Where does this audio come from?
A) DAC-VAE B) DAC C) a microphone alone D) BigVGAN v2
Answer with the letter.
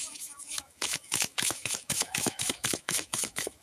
A